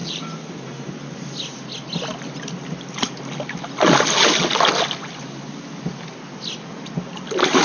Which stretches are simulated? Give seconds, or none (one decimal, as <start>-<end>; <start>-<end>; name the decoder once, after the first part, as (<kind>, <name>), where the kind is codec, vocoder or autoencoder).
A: 0.0-0.9 (vocoder, BigVGAN v2)